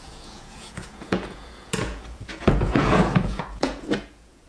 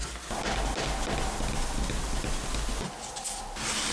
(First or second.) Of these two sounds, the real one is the second